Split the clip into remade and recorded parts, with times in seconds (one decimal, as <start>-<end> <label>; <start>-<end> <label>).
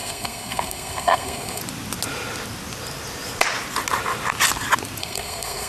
0.0-1.6 remade; 1.6-5.0 recorded; 5.0-5.7 remade